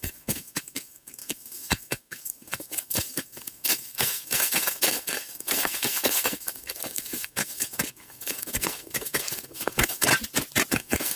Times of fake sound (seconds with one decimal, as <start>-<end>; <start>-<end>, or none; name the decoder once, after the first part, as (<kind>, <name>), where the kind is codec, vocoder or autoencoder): 0.0-10.1 (codec, SNAC); 10.7-11.2